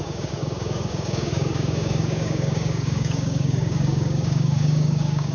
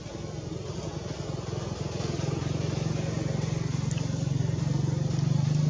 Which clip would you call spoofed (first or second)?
first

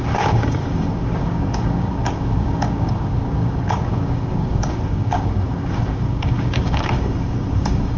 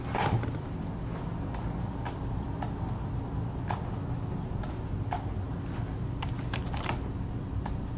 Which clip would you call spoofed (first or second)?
first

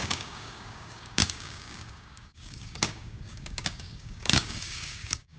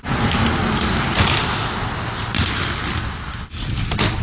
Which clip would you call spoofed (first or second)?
first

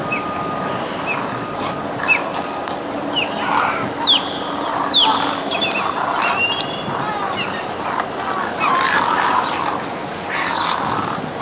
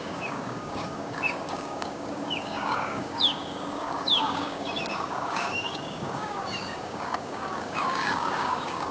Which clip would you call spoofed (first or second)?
second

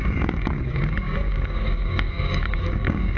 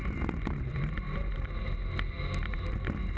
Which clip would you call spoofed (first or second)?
first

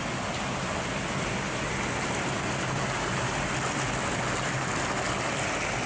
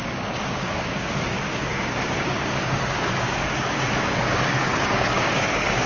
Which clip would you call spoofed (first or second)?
second